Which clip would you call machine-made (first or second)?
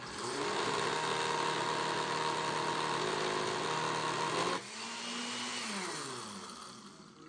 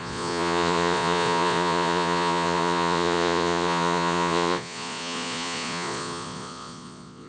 second